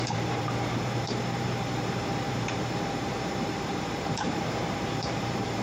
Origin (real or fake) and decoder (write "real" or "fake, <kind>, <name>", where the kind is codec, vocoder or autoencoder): fake, vocoder, BigVGAN v2